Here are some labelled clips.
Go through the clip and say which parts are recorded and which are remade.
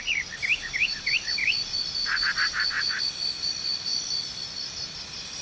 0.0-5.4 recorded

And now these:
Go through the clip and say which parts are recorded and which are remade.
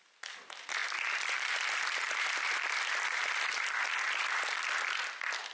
0.0-5.5 recorded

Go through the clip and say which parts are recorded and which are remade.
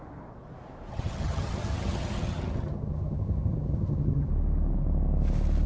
0.0-0.9 recorded; 0.9-4.3 remade; 4.3-5.7 recorded